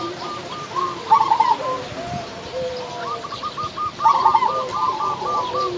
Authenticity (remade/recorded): remade